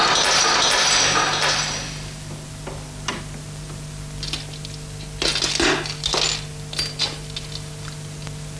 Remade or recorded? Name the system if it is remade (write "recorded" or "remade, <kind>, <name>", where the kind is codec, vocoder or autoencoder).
recorded